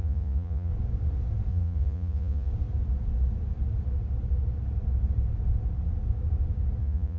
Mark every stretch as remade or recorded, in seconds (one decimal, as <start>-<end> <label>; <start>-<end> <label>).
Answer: 0.0-0.7 remade; 0.7-1.5 recorded; 1.5-2.5 remade; 2.5-6.8 recorded; 6.8-7.2 remade